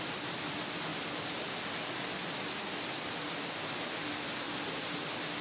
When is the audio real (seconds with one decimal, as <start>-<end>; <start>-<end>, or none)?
0.0-5.4